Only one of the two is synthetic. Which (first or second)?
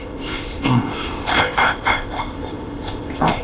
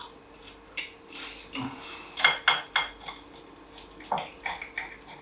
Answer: first